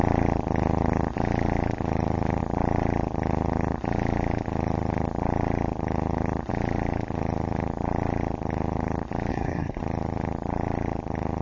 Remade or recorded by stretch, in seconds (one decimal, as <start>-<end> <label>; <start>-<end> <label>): 0.0-9.3 recorded; 9.3-9.8 remade; 9.8-11.4 recorded